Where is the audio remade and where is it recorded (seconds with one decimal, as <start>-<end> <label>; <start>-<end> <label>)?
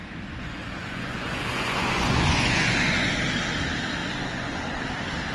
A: 0.0-3.1 remade; 3.1-4.0 recorded; 4.0-4.8 remade; 4.8-5.3 recorded